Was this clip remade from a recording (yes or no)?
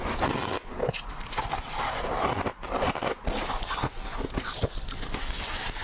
no